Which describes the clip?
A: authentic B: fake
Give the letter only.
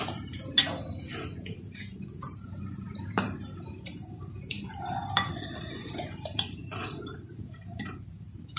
B